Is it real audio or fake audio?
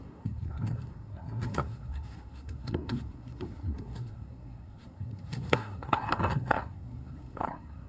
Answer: fake